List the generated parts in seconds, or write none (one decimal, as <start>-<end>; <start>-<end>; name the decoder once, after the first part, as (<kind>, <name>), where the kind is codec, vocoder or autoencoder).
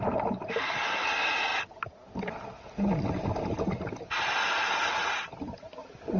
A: none